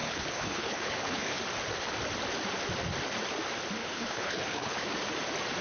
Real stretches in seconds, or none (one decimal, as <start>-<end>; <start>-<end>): 1.4-3.8; 4.8-5.6